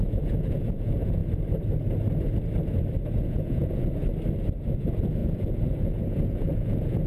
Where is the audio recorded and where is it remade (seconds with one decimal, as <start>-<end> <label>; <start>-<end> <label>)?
0.0-1.2 remade; 1.2-3.2 recorded; 3.2-4.0 remade; 4.0-4.6 recorded; 4.6-7.1 remade